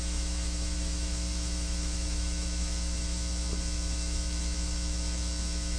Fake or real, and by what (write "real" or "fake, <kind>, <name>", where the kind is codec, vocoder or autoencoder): fake, autoencoder, DAC-VAE